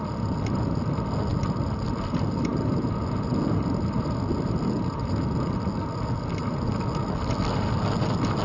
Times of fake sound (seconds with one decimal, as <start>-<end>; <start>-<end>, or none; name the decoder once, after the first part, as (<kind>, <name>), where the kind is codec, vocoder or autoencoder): none